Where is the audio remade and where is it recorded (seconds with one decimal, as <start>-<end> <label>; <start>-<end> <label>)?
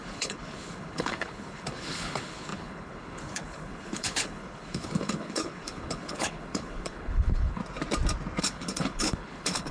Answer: 0.0-7.6 remade; 7.6-8.4 recorded; 8.4-9.7 remade